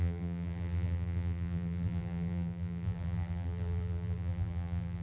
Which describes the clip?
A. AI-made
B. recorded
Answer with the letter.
A